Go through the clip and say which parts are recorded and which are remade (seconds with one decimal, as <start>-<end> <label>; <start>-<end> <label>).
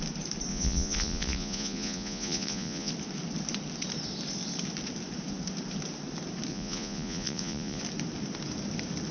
0.0-0.5 recorded; 0.5-2.9 remade; 2.9-6.5 recorded; 6.5-7.8 remade; 7.8-9.1 recorded